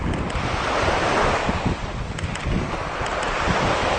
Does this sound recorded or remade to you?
recorded